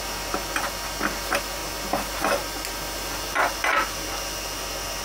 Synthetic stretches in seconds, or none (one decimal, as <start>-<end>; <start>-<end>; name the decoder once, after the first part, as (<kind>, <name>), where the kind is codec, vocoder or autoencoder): none